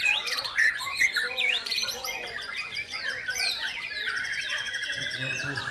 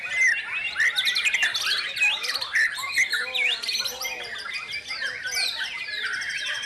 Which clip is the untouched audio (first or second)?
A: second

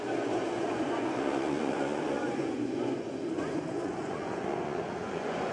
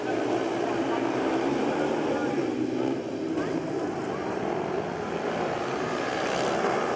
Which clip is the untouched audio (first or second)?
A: second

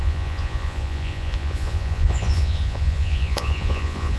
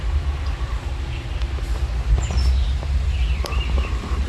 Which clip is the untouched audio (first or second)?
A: second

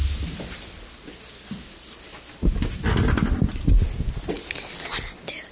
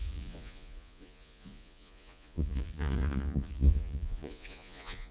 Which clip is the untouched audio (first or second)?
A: first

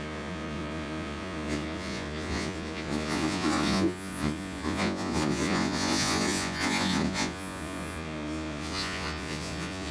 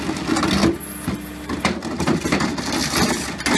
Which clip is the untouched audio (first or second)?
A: second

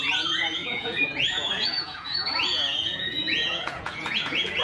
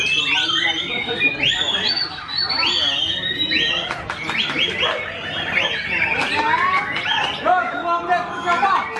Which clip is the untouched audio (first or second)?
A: second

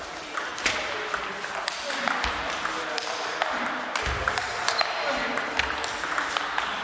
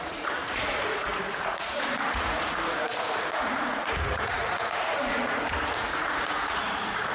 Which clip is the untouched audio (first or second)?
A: first